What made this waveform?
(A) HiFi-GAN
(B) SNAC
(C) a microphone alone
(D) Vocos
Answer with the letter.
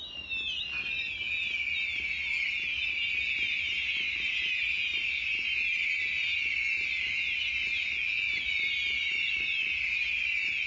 C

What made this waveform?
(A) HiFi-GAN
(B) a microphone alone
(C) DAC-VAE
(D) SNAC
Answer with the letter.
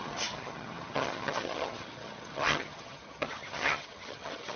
A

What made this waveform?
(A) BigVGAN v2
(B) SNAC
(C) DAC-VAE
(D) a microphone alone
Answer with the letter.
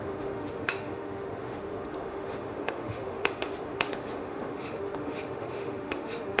C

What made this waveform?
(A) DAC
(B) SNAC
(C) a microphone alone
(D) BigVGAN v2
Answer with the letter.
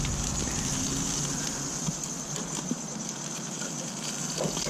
C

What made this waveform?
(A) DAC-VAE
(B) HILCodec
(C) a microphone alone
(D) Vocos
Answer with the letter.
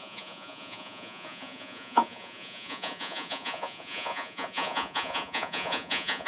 D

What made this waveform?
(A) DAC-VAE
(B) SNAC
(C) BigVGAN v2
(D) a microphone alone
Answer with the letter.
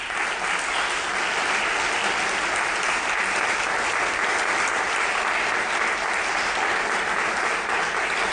D